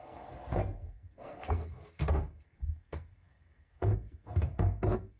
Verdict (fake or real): fake